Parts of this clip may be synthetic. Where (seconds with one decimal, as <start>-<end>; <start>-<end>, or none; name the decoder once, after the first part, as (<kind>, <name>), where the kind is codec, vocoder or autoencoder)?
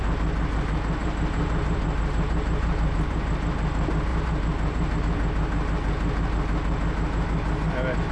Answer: 1.0-3.3 (vocoder, BigVGAN v2); 4.1-5.0